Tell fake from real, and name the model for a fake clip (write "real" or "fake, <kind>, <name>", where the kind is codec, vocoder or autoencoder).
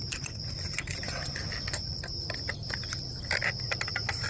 real